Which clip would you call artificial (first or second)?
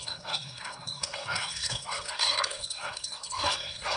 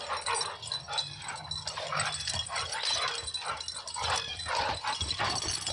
first